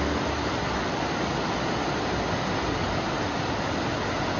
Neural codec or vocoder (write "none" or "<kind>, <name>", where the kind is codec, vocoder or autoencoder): none